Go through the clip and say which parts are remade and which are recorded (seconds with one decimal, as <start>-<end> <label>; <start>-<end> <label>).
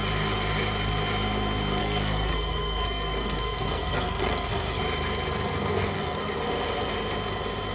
0.0-1.8 recorded; 1.8-4.8 remade; 4.8-5.7 recorded; 5.7-6.4 remade; 6.4-7.7 recorded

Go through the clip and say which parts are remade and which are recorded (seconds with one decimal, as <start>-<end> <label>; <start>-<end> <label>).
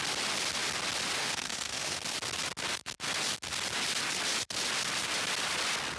0.0-1.2 recorded; 1.2-2.0 remade; 2.0-6.0 recorded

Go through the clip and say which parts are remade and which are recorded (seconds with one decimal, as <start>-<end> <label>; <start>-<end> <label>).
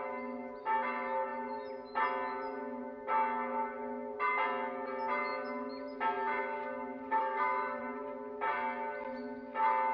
0.0-7.2 recorded; 7.2-7.8 remade; 7.8-9.9 recorded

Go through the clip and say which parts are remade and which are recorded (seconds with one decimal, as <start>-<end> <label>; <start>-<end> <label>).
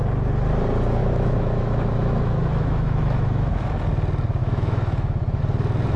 0.0-1.0 recorded; 1.0-3.8 remade; 3.8-4.4 recorded; 4.4-5.4 remade; 5.4-6.0 recorded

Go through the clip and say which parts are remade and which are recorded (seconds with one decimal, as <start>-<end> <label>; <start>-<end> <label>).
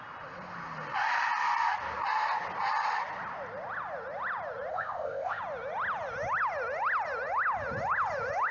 0.0-4.7 recorded; 4.7-5.4 remade; 5.4-8.5 recorded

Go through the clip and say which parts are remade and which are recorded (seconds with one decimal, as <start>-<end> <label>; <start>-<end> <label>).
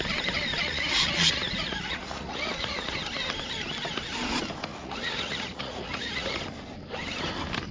0.0-0.6 recorded; 0.6-2.9 remade; 2.9-4.7 recorded; 4.7-6.4 remade; 6.4-7.7 recorded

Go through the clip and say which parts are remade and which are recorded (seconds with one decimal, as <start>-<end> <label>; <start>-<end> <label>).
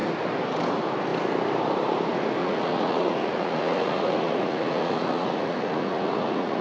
0.0-2.4 recorded; 2.4-6.6 remade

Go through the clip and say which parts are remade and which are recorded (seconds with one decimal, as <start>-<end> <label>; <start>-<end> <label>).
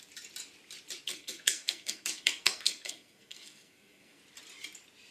0.0-1.1 recorded; 1.1-4.2 remade; 4.2-5.1 recorded